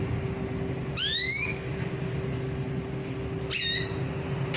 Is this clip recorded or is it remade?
recorded